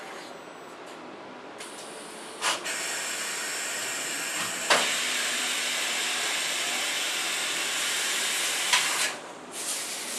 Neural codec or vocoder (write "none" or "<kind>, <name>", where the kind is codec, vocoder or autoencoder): none